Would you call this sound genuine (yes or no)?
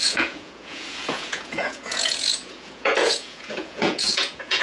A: no